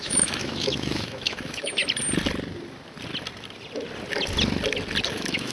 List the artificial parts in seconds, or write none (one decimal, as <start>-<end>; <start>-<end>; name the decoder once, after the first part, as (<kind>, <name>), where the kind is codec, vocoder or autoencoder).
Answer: 0.0-1.8 (autoencoder, DAC-VAE); 5.1-5.5

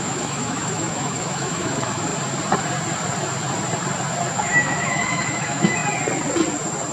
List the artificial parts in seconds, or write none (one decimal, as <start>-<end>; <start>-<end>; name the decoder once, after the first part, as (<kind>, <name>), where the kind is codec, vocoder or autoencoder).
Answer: 0.0-2.1 (autoencoder, DAC-VAE); 4.3-5.8